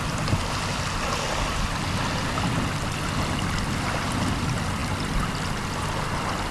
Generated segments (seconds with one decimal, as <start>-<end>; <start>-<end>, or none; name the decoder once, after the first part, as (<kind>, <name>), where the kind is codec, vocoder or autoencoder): none